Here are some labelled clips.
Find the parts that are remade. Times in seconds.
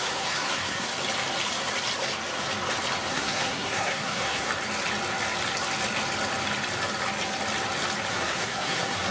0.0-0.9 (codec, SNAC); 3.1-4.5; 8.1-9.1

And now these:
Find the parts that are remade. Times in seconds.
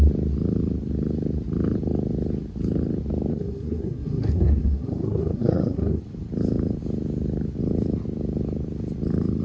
3.3-6.0 (codec, SNAC)